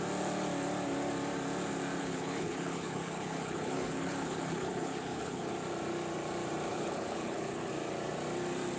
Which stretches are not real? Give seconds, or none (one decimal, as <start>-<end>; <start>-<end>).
2.0-5.5; 6.7-7.7